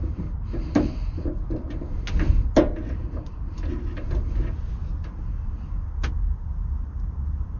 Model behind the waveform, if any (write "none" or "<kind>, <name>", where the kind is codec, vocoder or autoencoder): none